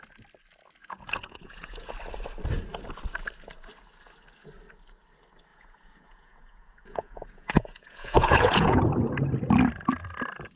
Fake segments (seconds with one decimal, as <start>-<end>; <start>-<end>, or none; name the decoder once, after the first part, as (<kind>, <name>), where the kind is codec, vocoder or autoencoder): 0.8-1.9 (vocoder, Vocos); 5.5-8.8

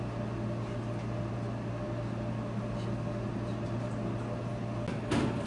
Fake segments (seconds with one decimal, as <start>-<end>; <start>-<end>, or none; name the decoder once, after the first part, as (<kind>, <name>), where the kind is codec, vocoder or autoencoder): none

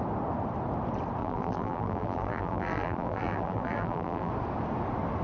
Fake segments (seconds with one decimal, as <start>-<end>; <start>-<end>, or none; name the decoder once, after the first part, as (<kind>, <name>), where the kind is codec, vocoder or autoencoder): 1.2-4.3 (vocoder, BigVGAN v2)

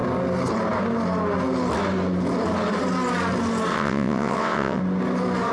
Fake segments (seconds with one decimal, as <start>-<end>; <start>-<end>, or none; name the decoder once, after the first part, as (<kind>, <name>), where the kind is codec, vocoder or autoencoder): 3.7-4.8 (vocoder, WaveNeXt)

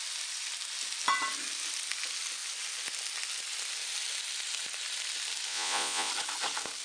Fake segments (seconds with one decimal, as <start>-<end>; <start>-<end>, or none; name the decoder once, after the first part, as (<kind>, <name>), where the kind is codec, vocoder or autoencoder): 5.5-6.1 (vocoder, Vocos)

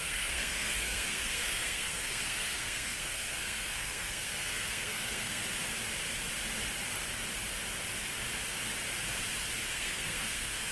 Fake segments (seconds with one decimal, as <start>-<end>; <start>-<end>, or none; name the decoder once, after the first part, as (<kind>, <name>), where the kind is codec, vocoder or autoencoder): 0.0-5.4 (codec, SNAC); 9.7-10.7

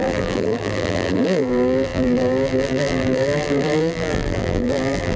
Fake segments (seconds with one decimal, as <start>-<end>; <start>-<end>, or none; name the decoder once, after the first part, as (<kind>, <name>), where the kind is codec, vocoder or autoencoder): 0.0-5.2 (vocoder, BigVGAN v2)